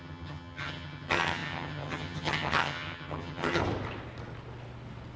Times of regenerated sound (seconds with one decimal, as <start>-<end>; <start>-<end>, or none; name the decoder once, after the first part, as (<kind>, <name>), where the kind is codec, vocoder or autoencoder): 0.0-3.6 (vocoder, HiFi-GAN)